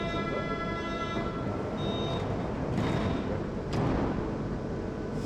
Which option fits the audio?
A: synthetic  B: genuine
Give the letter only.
B